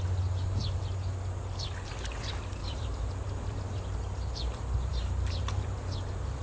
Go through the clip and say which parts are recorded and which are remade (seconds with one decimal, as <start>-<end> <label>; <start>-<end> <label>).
0.0-2.6 recorded; 2.6-3.6 remade; 3.6-4.9 recorded; 4.9-5.9 remade; 5.9-6.4 recorded